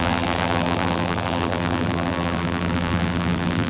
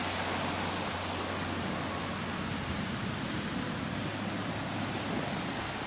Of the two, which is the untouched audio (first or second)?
second